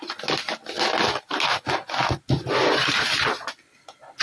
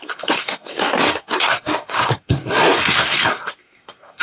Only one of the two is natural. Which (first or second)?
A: first